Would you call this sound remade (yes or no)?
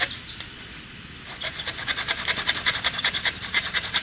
no